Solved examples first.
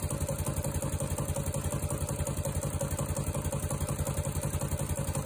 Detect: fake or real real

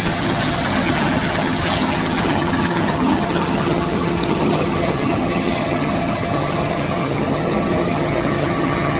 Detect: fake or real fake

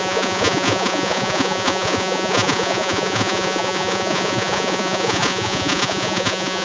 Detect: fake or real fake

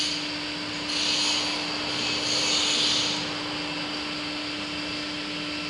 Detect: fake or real real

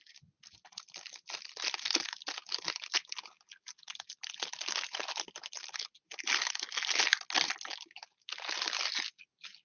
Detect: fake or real real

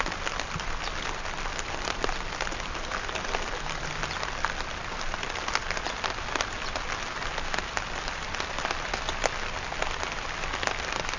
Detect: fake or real real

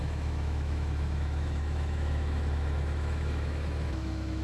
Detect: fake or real fake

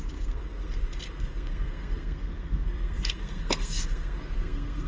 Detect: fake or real fake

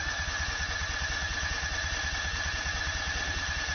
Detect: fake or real real